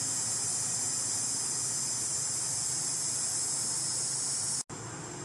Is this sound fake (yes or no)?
no